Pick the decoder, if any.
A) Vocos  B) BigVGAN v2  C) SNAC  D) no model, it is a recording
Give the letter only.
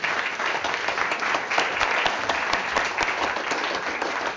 D